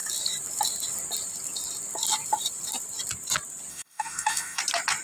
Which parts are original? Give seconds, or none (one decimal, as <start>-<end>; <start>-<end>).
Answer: 0.0-3.7; 4.6-5.0